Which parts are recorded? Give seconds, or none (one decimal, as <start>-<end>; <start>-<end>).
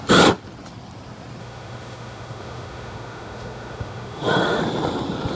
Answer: 0.0-1.4; 4.6-5.3